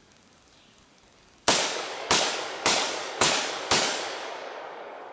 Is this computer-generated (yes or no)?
yes